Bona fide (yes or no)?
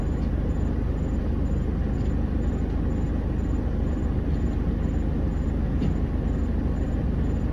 yes